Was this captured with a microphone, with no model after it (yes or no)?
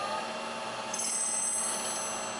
yes